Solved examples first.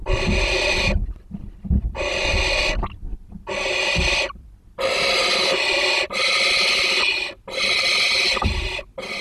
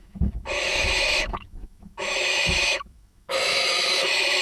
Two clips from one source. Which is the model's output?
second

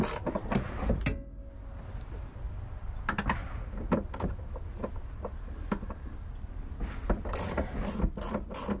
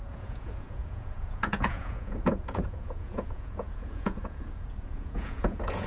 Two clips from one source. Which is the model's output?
second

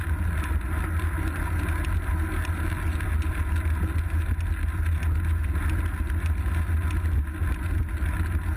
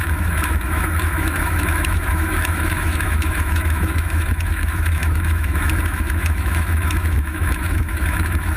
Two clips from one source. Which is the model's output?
second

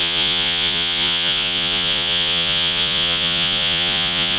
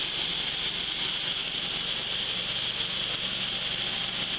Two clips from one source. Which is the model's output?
first